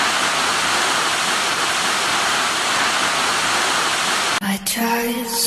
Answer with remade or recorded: recorded